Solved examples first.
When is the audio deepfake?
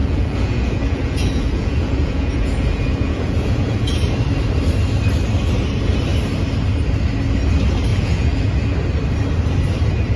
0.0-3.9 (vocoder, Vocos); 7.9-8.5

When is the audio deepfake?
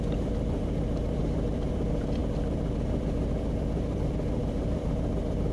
0.0-5.5 (vocoder, BigVGAN v2)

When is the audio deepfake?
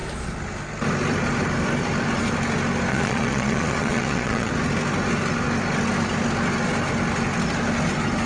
2.9-4.5 (vocoder, Vocos)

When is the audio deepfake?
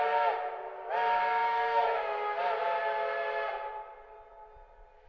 1.4-2.0 (autoencoder, DAC-VAE)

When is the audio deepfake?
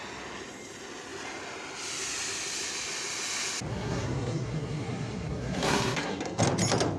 3.7-6.4 (codec, SNAC)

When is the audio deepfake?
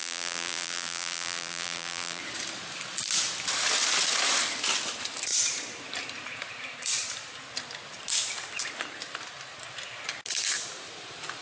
0.0-2.2 (vocoder, BigVGAN v2)